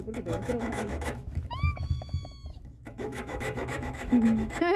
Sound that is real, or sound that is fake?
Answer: fake